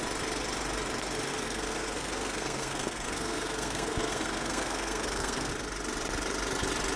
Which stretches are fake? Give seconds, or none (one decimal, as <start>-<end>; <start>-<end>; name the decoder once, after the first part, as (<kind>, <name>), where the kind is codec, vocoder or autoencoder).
1.3-5.5 (codec, SNAC)